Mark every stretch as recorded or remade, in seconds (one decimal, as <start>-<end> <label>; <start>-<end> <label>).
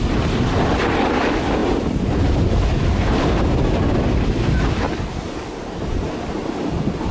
0.0-1.6 recorded; 1.6-3.8 remade; 3.8-6.4 recorded; 6.4-7.1 remade